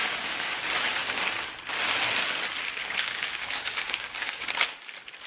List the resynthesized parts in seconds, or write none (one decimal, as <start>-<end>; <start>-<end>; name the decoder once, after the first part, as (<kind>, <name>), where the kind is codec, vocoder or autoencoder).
0.0-0.6 (codec, DAC); 2.8-4.5